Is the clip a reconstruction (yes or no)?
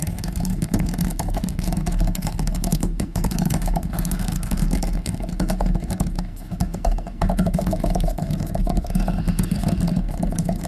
yes